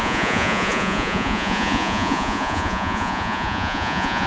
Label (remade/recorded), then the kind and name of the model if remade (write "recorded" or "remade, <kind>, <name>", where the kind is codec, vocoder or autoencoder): remade, vocoder, Vocos